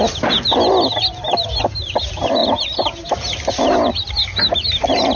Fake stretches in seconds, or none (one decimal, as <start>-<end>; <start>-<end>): none